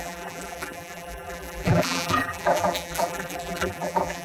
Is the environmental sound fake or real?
fake